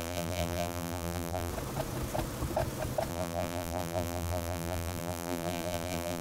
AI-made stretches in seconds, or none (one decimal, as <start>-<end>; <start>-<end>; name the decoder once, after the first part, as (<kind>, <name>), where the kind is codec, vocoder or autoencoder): 0.0-1.5 (vocoder, BigVGAN v2); 3.1-6.2

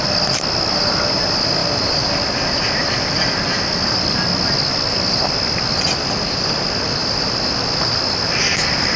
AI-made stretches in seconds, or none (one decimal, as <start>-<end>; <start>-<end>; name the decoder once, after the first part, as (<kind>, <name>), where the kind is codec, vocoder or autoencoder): none

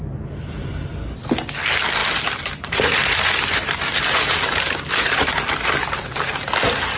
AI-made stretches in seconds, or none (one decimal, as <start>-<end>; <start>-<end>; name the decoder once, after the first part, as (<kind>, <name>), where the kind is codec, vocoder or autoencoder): 2.0-5.3 (vocoder, BigVGAN v2); 5.8-6.5

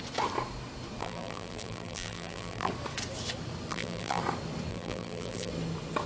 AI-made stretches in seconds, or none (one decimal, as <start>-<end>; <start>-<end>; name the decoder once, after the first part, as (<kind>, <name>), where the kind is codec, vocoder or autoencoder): 1.0-2.7 (vocoder, BigVGAN v2); 3.7-4.2; 4.7-5.5

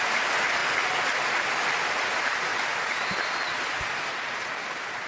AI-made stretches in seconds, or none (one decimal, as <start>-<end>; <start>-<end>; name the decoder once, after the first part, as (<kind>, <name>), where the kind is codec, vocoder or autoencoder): 0.0-0.6 (vocoder, BigVGAN v2); 2.0-2.5; 3.6-5.1

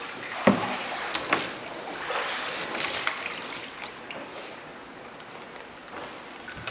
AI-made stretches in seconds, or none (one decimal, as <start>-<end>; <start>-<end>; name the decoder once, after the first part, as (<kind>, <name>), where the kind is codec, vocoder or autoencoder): none

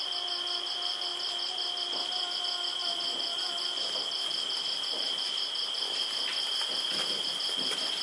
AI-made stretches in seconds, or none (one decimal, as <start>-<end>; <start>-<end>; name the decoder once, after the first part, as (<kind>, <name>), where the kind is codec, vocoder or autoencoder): 2.8-5.4 (vocoder, BigVGAN v2); 6.3-7.1